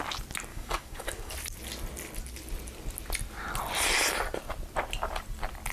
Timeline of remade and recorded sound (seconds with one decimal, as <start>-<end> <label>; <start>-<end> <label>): 0.0-0.5 recorded; 0.5-1.3 remade; 1.3-5.7 recorded

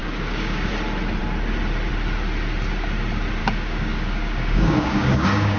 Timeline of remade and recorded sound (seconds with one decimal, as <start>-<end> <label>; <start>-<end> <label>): 0.0-0.7 remade; 0.7-3.4 recorded; 3.4-5.6 remade

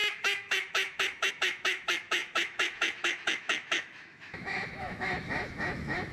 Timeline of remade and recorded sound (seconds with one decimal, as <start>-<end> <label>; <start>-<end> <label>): 0.0-6.1 remade